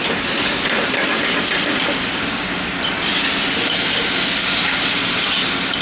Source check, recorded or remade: remade